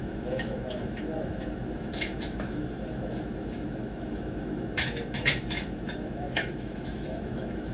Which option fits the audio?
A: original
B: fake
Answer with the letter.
B